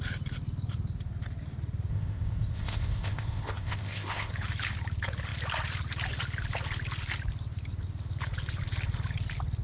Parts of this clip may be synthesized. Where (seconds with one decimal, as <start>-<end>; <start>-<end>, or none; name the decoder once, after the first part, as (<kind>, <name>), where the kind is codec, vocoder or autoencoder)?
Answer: 1.9-4.3 (codec, ZipCodec)